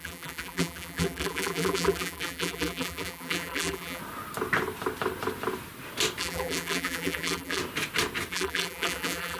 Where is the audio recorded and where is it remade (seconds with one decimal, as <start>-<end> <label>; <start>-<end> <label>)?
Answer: 0.0-4.0 remade; 4.0-6.2 recorded; 6.2-7.6 remade; 7.6-8.3 recorded; 8.3-9.4 remade